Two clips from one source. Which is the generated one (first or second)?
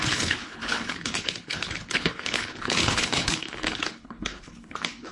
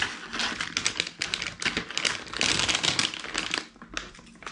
first